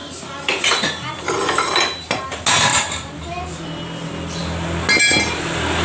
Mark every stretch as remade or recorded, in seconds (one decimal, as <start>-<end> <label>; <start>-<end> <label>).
0.0-1.8 remade; 1.8-2.7 recorded; 2.7-3.4 remade; 3.4-5.8 recorded